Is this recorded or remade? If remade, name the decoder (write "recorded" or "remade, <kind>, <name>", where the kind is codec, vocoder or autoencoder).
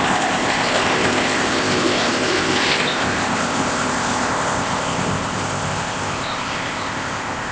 remade, codec, ZipCodec